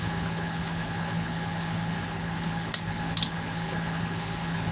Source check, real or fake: fake